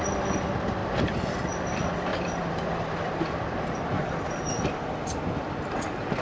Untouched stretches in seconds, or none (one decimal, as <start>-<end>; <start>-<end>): 0.0-2.1; 4.4-6.2